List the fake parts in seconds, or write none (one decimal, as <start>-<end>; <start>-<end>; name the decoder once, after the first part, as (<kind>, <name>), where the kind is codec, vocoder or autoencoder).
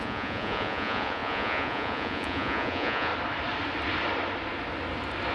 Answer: 0.0-3.1 (vocoder, Vocos)